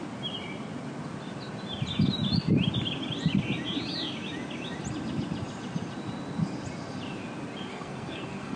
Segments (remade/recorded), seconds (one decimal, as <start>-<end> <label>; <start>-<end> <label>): 0.0-7.7 recorded; 7.7-8.6 remade

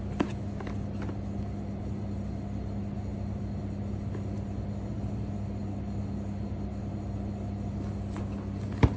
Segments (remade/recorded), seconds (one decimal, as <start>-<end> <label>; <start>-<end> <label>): 0.0-9.0 recorded

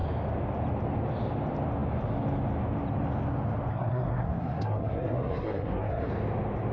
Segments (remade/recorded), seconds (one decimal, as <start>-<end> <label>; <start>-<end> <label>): 0.0-3.7 recorded; 3.7-6.1 remade; 6.1-6.7 recorded

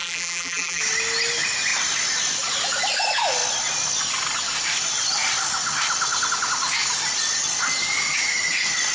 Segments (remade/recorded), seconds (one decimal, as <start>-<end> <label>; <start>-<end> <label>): 0.0-0.8 remade; 0.8-8.9 recorded

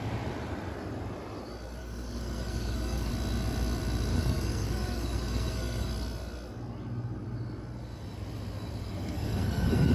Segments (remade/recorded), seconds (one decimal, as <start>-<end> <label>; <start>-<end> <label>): 0.0-1.8 recorded; 1.8-3.1 remade; 3.1-4.1 recorded; 4.1-5.9 remade; 5.9-8.8 recorded; 8.8-9.9 remade

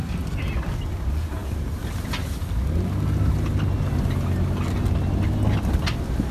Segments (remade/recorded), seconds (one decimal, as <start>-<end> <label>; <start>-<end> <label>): 0.0-6.3 recorded

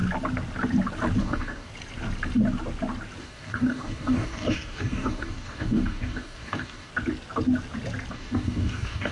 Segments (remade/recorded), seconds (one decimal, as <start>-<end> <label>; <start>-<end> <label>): 0.0-1.2 recorded; 1.2-1.7 remade; 1.7-3.2 recorded; 3.2-6.9 remade; 6.9-8.1 recorded; 8.1-9.1 remade